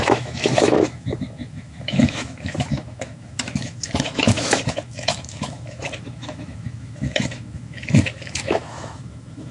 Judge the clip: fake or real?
fake